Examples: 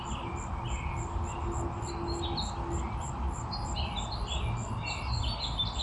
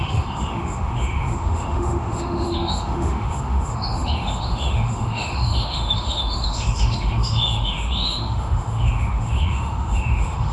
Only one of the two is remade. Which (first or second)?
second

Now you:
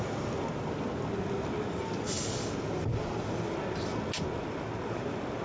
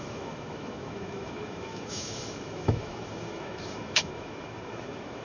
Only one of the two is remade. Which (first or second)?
second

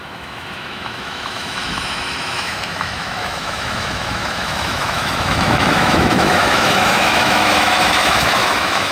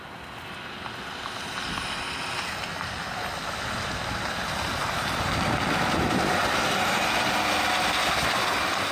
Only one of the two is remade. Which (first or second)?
first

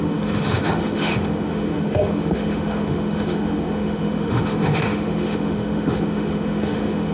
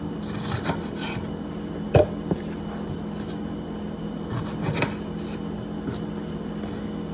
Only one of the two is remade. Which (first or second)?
first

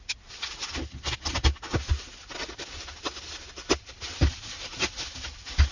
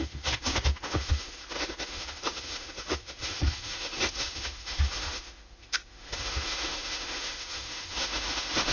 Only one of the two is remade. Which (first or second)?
second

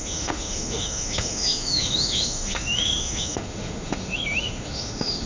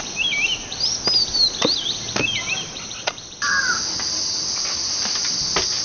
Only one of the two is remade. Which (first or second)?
first